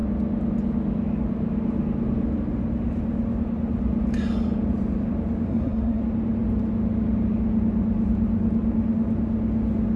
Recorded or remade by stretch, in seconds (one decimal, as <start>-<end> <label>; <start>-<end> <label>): 0.0-5.5 recorded; 5.5-6.0 remade; 6.0-10.0 recorded